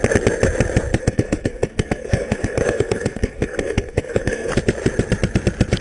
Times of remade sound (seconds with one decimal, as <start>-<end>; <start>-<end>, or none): 1.0-4.5